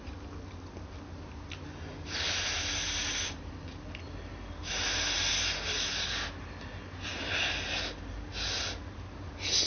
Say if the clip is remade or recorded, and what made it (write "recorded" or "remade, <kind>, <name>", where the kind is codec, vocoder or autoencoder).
recorded